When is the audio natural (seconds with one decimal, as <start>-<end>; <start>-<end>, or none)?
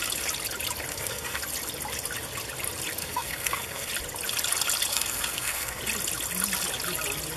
0.0-0.9; 1.4-3.0; 3.9-4.9; 5.8-7.4